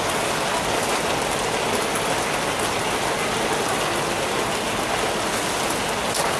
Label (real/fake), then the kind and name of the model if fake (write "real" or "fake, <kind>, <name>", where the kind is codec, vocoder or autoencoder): real